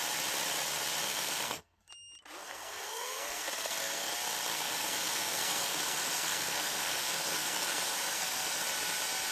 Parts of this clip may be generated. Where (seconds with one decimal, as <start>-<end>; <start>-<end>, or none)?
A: 1.0-1.9; 2.4-4.1; 4.5-8.6